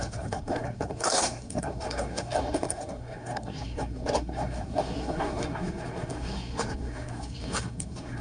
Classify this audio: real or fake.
fake